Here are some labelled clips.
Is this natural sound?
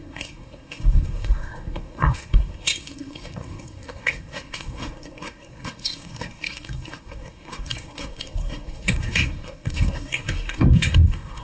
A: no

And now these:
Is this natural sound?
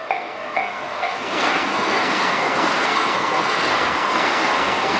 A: no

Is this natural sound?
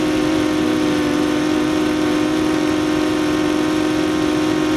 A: yes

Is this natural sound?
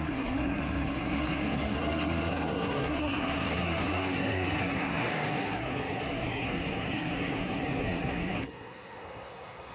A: no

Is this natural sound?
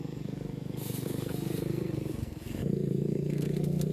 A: no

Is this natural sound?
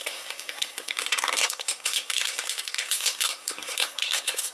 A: no